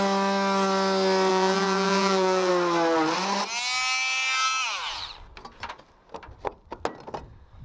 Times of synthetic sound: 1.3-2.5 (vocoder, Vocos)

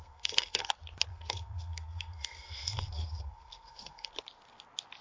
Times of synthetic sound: 0.0-0.7 (codec, SNAC); 1.1-4.1